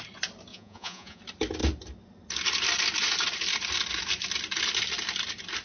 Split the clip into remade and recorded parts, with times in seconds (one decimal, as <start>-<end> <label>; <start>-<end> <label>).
0.0-0.5 recorded; 0.5-1.2 remade; 1.2-5.6 recorded